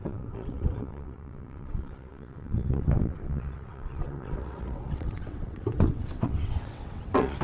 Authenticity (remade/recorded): remade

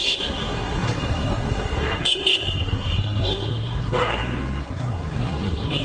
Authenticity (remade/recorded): remade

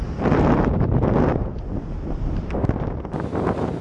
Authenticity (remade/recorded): recorded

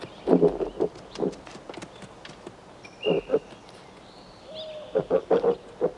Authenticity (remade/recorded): recorded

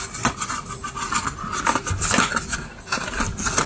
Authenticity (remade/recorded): recorded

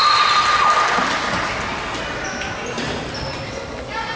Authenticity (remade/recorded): recorded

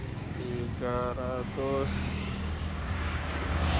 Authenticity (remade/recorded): remade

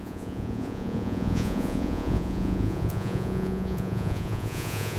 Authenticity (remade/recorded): remade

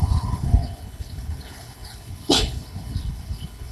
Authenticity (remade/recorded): remade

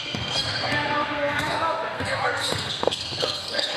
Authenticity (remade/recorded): remade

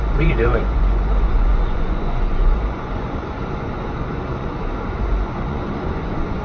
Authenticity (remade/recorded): remade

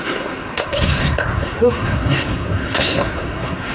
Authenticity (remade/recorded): remade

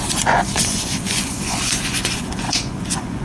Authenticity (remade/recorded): remade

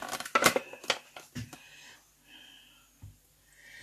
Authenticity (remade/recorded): recorded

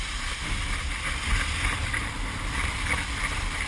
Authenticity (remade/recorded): recorded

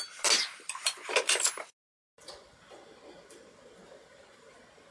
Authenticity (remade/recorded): recorded